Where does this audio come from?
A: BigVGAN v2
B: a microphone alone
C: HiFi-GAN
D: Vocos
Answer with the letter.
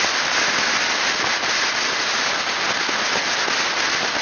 B